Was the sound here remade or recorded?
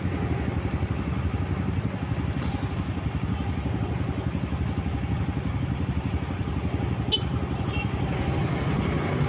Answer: recorded